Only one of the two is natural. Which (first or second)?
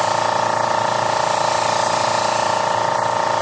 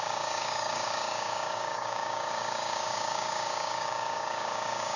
first